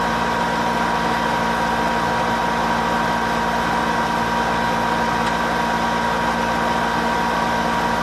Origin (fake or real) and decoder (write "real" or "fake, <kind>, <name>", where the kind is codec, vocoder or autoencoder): real